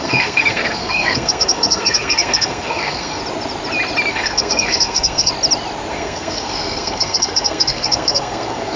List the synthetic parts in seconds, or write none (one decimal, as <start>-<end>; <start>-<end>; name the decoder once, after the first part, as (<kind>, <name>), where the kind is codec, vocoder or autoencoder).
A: 0.0-3.2 (codec, SNAC); 4.1-5.3; 5.9-8.8